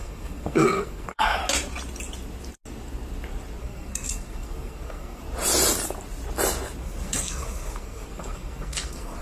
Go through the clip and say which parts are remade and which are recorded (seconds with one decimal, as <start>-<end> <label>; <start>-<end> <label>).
0.0-1.4 remade; 1.4-3.6 recorded; 3.6-5.2 remade; 5.2-6.8 recorded; 6.8-9.2 remade